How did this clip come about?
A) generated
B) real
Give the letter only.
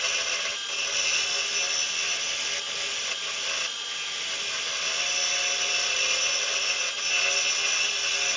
B